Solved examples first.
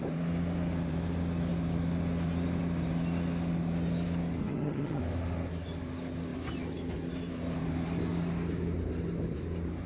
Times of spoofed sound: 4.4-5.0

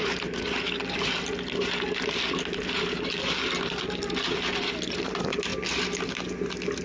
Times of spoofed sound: none

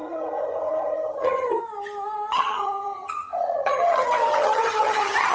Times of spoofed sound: 0.0-1.6; 2.3-5.3

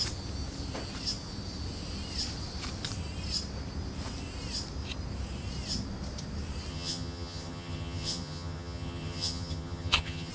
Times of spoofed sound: 6.7-10.3

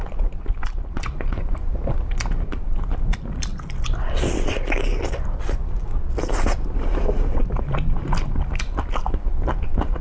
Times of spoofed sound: none

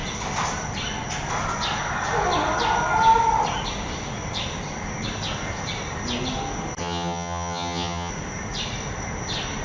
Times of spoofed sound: 6.8-8.1

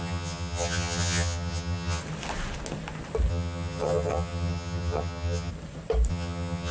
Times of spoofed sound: 0.0-2.0; 3.3-5.5; 6.1-6.7